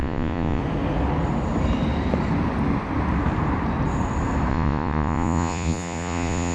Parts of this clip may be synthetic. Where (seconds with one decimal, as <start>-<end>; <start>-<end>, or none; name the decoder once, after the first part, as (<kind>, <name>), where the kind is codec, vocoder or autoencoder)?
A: 0.0-0.6 (vocoder, Vocos); 4.5-6.5